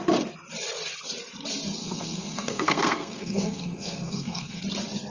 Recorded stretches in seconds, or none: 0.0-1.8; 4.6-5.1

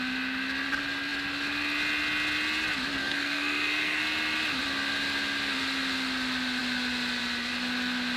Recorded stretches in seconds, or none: 0.0-3.0; 4.0-8.2

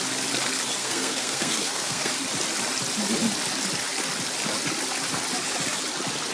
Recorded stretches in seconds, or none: 0.0-0.8; 2.1-6.3

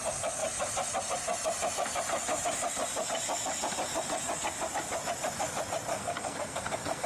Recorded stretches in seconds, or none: 0.0-5.9

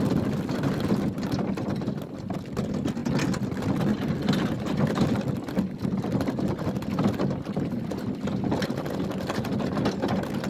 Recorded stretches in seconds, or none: 0.0-10.5

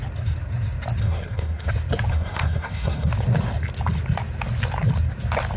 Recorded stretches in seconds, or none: 0.0-1.0; 1.7-2.1; 3.1-5.6